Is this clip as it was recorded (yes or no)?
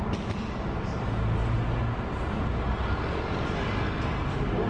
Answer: yes